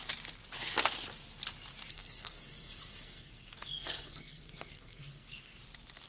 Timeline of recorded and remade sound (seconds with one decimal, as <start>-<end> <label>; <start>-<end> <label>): 0.0-1.9 recorded; 1.9-5.6 remade; 5.6-6.1 recorded